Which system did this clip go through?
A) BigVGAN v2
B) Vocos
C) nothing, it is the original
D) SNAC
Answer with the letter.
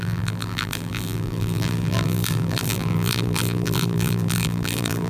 A